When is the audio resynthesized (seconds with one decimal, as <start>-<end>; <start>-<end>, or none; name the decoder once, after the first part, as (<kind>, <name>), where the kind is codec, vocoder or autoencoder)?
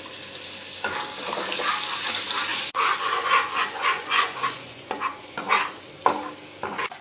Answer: 2.5-5.5 (vocoder, Vocos)